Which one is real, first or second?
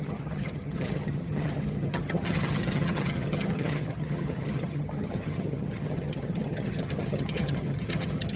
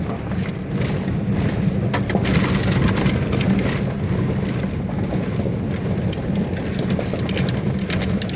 second